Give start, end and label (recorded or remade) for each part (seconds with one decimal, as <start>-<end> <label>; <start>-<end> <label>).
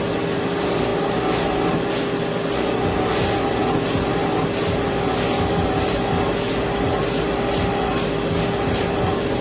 0.0-9.4 recorded